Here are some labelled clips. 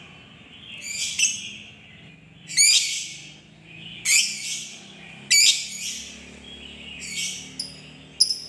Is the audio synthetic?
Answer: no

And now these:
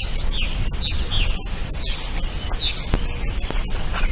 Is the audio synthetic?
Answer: no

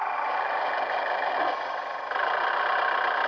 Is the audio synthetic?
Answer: no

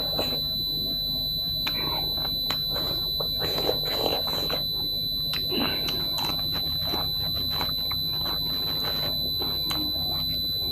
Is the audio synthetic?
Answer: no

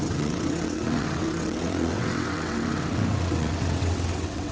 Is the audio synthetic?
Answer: yes